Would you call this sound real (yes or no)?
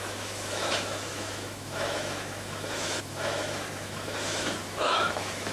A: no